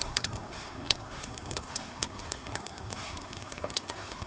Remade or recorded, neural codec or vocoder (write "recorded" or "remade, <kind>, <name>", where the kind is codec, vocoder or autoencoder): remade, codec, SNAC